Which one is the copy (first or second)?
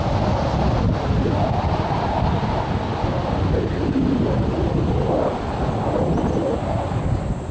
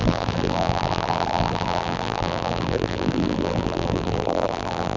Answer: second